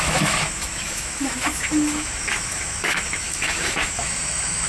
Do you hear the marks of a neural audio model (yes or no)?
yes